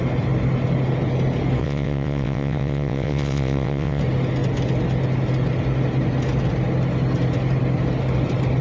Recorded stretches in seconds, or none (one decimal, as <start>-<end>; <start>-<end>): 0.0-1.6; 4.0-8.6